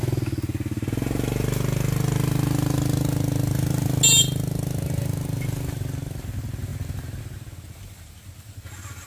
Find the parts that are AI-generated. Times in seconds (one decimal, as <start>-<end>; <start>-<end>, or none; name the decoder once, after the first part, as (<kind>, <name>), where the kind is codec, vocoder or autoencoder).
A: none